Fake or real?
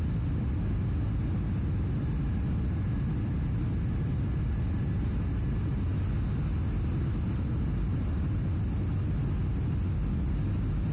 real